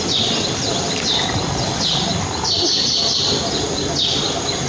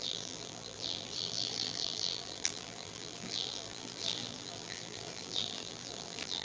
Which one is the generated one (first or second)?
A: second